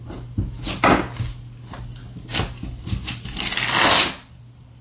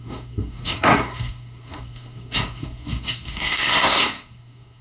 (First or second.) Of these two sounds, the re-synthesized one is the second